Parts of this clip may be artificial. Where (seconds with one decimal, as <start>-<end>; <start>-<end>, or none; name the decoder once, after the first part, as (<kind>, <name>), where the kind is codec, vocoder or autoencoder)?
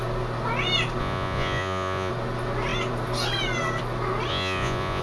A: 1.0-2.1 (vocoder, Vocos); 4.3-5.0